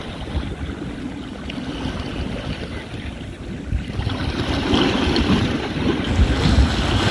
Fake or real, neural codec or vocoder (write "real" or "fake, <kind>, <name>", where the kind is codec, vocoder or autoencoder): real